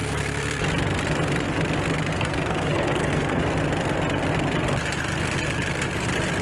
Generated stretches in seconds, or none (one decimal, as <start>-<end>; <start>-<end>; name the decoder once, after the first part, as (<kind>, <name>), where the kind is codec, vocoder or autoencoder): 2.1-3.4 (codec, SNAC)